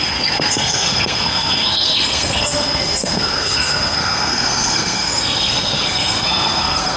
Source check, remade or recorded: remade